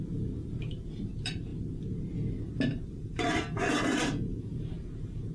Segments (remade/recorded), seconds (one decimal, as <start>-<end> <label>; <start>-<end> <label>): 0.0-1.5 remade; 1.5-2.9 recorded; 2.9-5.3 remade